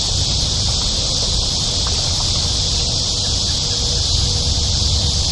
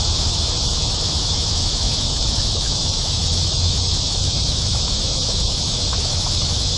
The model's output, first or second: second